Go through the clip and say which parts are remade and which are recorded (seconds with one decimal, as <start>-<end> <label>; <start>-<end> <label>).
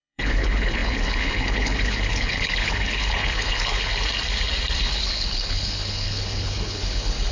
0.0-3.9 remade; 3.9-4.8 recorded; 4.8-7.3 remade